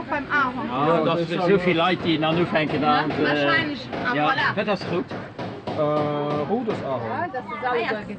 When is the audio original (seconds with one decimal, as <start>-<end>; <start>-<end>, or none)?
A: 0.0-1.0; 2.0-4.0; 5.0-5.4; 6.5-8.2